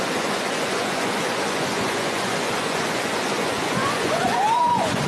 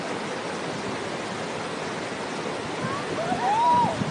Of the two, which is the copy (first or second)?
first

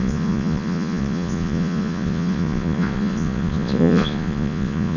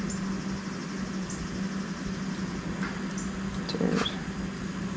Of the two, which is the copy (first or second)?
first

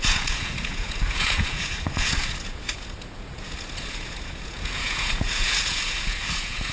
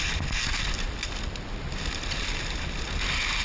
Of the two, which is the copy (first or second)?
first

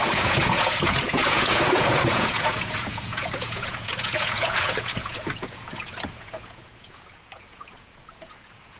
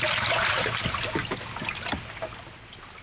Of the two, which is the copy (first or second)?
first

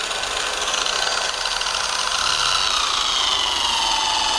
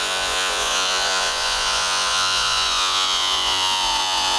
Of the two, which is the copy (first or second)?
second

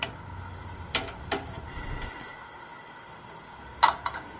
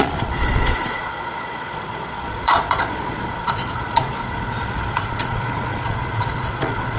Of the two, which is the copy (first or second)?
second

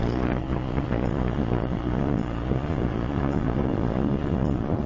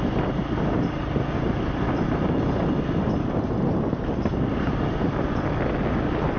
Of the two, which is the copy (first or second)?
first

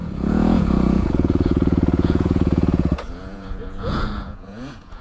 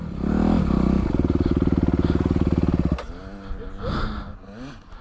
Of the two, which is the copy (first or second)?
first